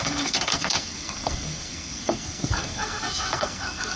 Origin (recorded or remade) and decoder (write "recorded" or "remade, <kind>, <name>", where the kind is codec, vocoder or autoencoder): remade, codec, SNAC